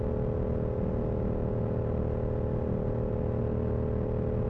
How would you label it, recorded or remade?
recorded